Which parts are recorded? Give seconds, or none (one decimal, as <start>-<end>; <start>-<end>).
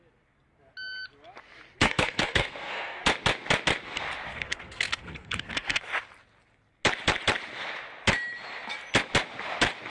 0.0-1.8; 3.0-4.3; 5.9-9.9